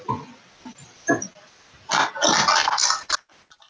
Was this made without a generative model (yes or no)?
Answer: yes